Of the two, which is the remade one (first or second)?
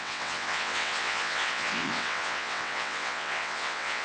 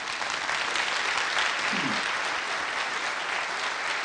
first